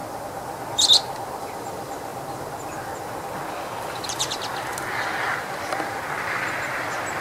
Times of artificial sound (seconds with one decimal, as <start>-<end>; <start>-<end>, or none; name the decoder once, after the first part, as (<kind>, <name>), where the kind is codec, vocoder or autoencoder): 1.4-2.1 (vocoder, BigVGAN v2); 5.0-7.2